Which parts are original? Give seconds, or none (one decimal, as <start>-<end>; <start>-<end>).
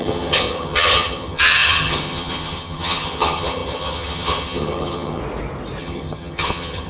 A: 5.2-5.8